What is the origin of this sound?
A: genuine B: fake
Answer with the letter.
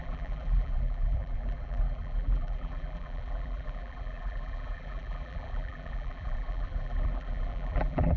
B